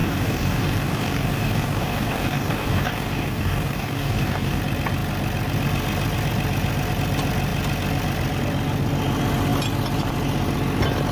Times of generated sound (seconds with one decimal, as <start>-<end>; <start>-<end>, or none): 0.0-4.6